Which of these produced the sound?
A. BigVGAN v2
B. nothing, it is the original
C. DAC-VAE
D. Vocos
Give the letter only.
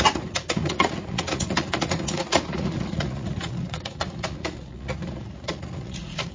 D